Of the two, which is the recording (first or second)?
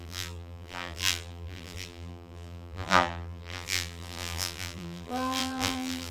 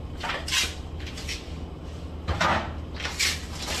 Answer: second